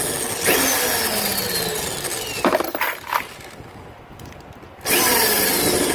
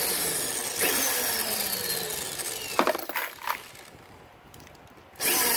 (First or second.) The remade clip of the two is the second